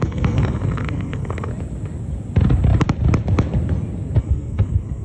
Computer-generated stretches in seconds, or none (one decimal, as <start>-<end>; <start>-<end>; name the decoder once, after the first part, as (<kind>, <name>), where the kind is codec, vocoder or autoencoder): 0.0-1.5 (codec, SNAC); 4.2-5.0